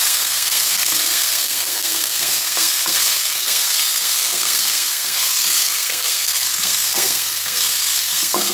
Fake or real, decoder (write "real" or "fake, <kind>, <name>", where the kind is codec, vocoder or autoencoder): fake, codec, SNAC